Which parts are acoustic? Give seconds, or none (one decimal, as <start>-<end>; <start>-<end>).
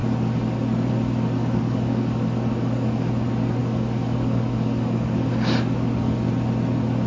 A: 0.0-1.4; 3.1-3.6; 6.3-7.1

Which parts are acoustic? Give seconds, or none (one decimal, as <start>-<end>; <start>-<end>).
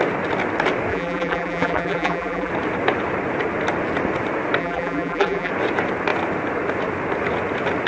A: 0.0-0.9; 2.5-4.6; 5.5-7.9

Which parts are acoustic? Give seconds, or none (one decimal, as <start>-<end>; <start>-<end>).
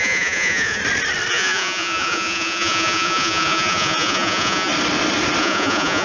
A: 0.8-1.3; 4.7-5.4